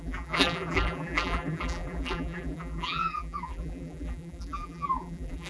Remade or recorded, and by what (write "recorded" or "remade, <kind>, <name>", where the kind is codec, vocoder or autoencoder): remade, vocoder, BigVGAN v2